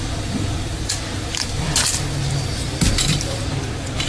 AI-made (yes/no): yes